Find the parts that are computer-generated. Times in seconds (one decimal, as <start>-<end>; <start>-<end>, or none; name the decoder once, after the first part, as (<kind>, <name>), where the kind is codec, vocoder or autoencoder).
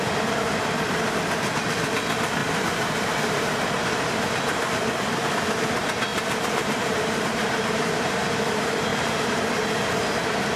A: 2.4-4.1 (vocoder, BigVGAN v2); 6.1-8.5; 8.9-9.5